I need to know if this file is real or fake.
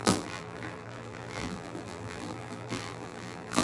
fake